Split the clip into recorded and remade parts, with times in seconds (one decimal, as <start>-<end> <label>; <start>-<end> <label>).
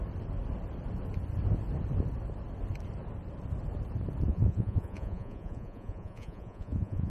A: 0.0-4.3 recorded; 4.3-7.1 remade